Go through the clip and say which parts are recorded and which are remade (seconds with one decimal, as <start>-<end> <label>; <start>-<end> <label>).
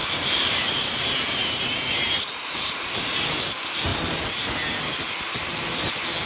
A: 0.0-3.9 remade; 3.9-6.3 recorded